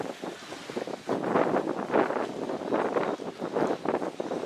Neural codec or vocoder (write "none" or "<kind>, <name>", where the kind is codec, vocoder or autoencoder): none